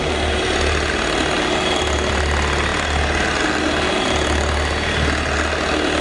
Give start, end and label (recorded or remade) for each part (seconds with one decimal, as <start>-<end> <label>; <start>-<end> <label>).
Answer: 0.0-6.0 recorded